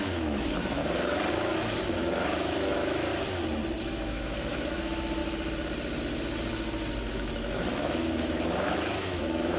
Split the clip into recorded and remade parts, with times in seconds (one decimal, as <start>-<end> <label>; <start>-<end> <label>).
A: 0.0-0.8 remade; 0.8-1.3 recorded; 1.3-3.1 remade; 3.1-3.8 recorded; 3.8-5.2 remade; 5.2-7.1 recorded; 7.1-9.6 remade